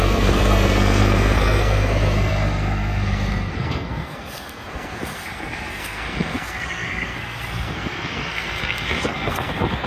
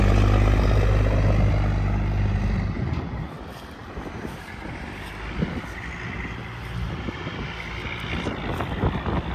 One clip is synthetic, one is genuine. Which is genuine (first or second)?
second